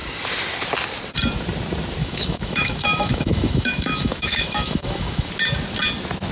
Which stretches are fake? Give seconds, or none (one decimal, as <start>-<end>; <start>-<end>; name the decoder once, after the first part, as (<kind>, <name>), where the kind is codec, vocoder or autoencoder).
2.0-5.3 (autoencoder, DAC-VAE)